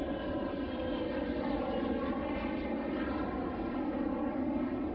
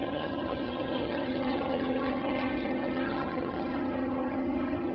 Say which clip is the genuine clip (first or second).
first